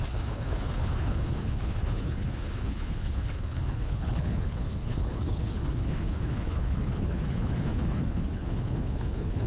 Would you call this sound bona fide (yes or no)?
no